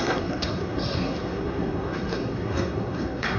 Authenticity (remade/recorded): remade